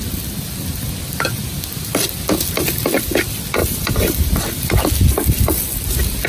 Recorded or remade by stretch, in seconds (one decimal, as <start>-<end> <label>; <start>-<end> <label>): 0.0-3.6 recorded; 3.6-4.3 remade; 4.3-6.3 recorded